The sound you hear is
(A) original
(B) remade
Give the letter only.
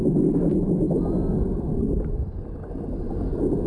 A